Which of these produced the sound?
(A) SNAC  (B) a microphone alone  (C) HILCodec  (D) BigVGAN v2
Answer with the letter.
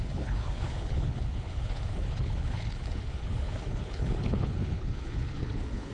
C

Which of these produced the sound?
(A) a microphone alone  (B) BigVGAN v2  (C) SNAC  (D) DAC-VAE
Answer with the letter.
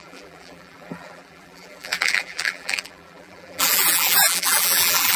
B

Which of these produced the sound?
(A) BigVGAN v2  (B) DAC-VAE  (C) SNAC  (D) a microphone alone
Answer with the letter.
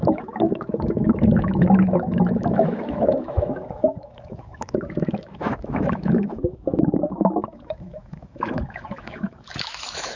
B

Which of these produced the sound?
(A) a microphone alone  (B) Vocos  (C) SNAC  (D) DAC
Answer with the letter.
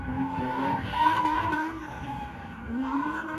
D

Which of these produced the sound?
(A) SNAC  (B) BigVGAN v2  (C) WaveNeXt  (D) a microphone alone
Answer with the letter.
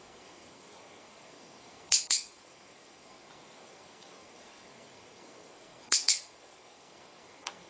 A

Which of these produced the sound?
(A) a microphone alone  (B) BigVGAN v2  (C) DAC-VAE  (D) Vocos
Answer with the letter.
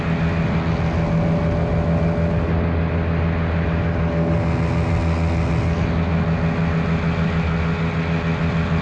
A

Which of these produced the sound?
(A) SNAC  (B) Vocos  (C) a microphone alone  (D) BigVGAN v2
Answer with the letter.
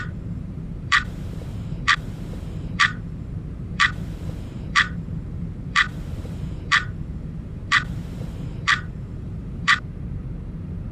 D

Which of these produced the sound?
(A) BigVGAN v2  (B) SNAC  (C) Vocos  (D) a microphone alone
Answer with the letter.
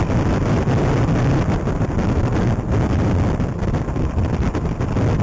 D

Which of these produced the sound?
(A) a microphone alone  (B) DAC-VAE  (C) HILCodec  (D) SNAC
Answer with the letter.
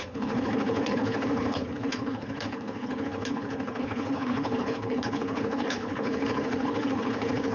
C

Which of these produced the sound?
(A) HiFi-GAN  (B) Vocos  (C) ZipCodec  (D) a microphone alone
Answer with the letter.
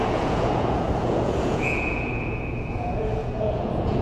B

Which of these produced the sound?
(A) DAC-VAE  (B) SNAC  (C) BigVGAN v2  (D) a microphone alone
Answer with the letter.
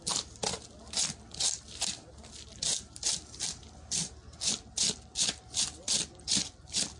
C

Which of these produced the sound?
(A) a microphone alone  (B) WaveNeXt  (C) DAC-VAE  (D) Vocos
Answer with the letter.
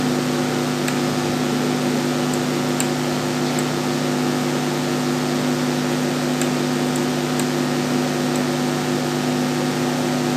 A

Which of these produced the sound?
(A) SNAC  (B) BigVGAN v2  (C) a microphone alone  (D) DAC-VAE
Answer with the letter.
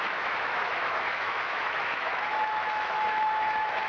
D